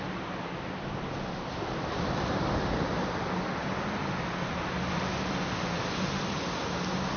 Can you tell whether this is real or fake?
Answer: real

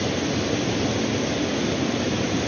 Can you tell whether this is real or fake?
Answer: real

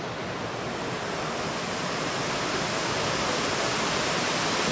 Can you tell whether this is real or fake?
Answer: real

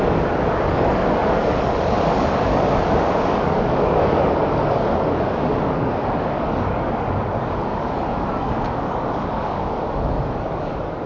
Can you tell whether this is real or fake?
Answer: fake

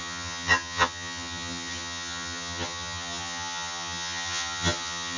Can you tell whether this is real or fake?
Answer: fake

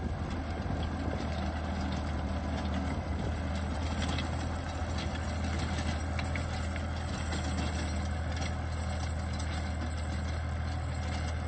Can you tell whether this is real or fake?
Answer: real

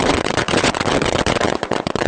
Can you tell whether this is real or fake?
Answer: fake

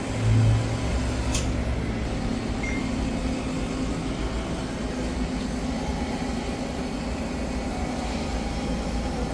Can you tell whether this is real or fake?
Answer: real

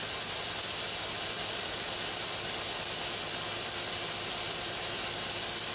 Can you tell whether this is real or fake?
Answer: real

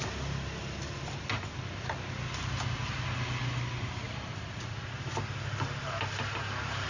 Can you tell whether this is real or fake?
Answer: real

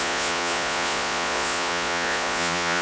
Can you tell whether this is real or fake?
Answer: fake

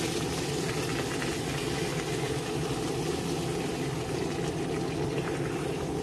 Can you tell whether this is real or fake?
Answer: real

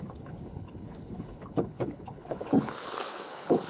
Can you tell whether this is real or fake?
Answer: fake